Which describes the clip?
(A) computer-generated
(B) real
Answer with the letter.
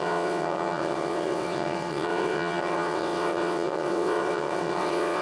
A